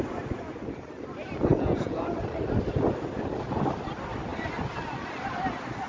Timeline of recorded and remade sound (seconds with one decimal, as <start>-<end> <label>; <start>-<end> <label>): 0.0-1.5 recorded; 1.5-2.0 remade; 2.0-5.9 recorded